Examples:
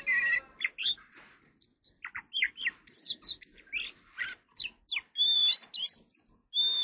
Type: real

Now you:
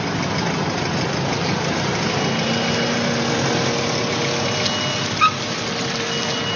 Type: real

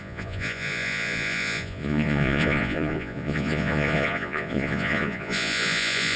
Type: fake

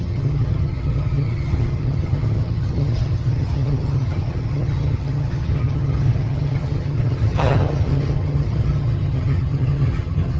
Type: fake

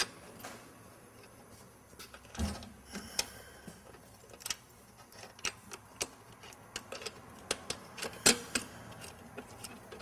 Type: real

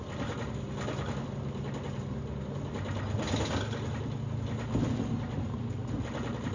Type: real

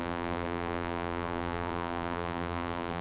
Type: fake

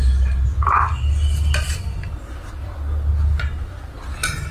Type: real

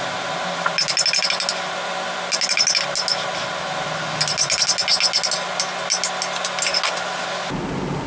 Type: real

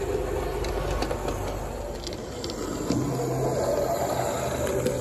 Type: real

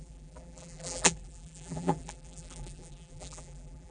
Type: fake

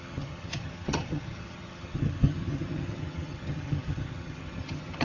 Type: fake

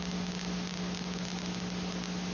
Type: real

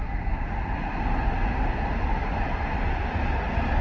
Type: real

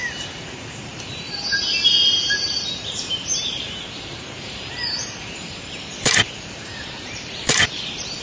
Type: fake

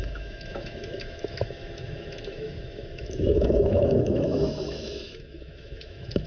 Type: fake